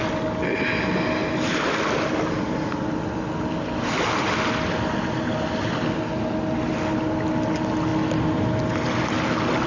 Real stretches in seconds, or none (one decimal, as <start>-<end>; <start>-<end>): 0.0-9.7